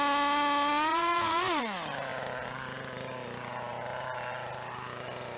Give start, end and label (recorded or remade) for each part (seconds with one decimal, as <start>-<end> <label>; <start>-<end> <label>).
0.0-0.9 recorded; 0.9-1.6 remade; 1.6-5.4 recorded